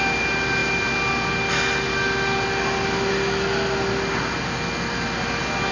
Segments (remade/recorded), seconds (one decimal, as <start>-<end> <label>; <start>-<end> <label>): 0.0-5.7 recorded